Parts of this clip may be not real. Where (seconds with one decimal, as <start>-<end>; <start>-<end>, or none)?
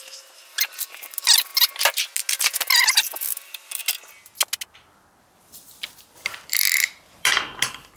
0.0-1.5; 2.7-3.8; 7.0-8.0